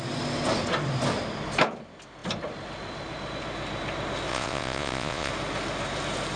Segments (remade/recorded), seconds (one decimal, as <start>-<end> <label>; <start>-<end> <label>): 0.0-4.3 recorded; 4.3-5.3 remade; 5.3-6.4 recorded